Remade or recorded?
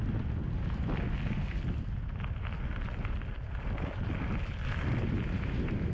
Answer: recorded